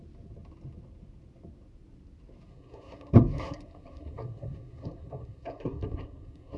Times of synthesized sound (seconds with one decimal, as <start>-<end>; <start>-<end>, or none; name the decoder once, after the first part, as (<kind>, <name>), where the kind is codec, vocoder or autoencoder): 2.5-6.6 (codec, SNAC)